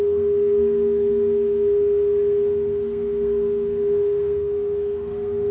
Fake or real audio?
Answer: fake